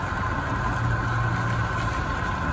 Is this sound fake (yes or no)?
no